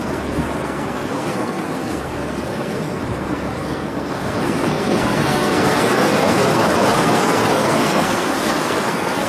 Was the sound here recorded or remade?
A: remade